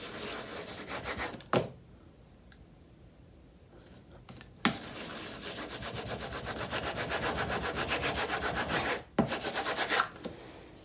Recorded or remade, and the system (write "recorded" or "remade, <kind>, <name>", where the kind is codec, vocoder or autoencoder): recorded